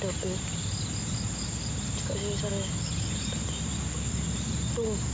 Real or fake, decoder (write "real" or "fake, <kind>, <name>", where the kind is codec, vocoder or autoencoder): real